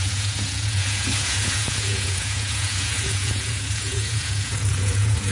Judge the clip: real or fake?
fake